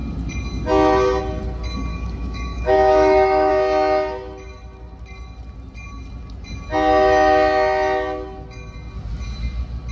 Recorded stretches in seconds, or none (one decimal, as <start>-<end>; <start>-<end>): 0.0-1.9; 3.5-9.9